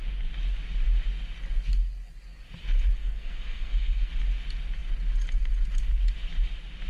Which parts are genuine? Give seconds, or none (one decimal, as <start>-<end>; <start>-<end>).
0.0-3.0; 4.1-6.9